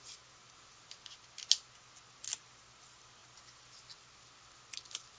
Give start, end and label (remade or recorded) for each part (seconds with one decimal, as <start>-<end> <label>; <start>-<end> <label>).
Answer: 0.0-5.2 recorded